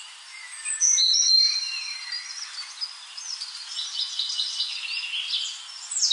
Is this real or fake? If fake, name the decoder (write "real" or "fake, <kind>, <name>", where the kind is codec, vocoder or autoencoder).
real